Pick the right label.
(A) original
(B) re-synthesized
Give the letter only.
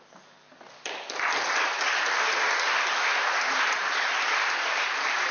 A